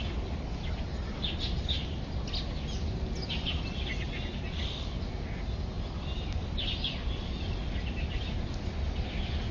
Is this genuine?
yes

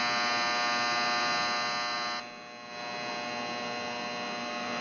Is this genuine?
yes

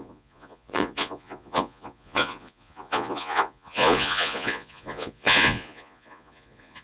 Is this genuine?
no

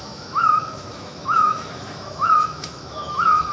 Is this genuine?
no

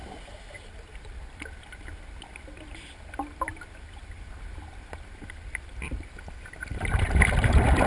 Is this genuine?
no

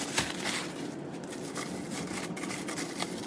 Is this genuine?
yes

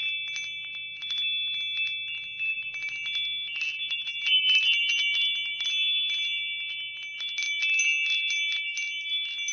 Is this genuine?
yes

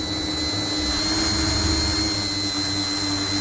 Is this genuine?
yes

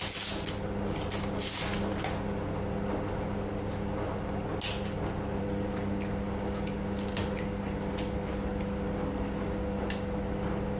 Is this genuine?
yes